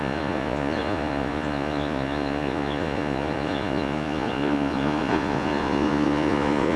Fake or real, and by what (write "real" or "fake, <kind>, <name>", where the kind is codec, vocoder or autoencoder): fake, vocoder, Vocos